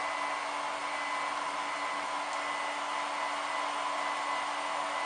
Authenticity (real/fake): real